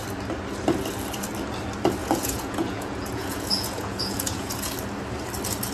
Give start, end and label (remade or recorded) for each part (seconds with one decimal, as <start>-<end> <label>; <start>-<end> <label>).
0.0-2.0 recorded; 2.0-4.7 remade; 4.7-5.7 recorded